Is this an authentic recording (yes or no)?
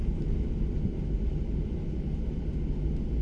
yes